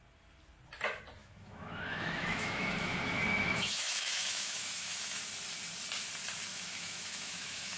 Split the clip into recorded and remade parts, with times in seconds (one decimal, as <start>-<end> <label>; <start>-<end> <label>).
0.0-1.2 recorded; 1.2-5.2 remade; 5.2-6.5 recorded; 6.5-7.8 remade